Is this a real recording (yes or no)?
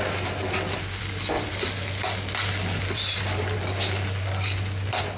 yes